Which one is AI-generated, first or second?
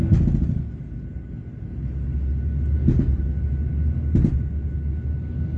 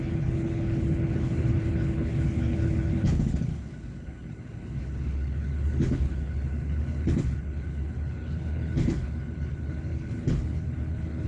second